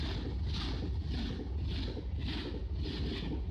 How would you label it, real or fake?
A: real